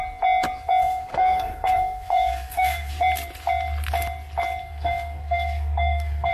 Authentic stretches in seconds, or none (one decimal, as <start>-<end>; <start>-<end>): 0.0-0.8; 2.9-4.6

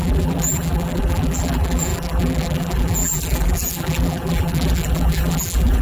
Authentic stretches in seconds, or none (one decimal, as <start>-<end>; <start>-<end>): none

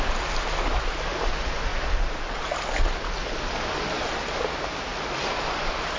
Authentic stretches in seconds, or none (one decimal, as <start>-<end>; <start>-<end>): 0.0-6.0

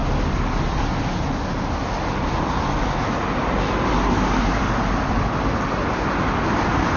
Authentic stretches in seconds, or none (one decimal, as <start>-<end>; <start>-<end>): 0.8-3.4; 5.1-7.0